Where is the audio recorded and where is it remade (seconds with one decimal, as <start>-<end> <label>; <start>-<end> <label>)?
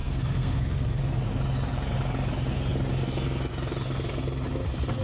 0.0-1.0 remade; 1.0-5.0 recorded